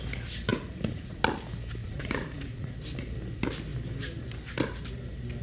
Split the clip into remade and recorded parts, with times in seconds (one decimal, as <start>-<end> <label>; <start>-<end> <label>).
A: 0.0-0.5 recorded; 0.5-1.2 remade; 1.2-1.8 recorded; 1.8-2.7 remade; 2.7-5.4 recorded